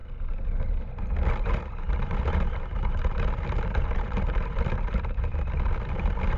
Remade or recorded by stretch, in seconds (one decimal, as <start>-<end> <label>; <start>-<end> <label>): 0.0-1.3 recorded; 1.3-6.4 remade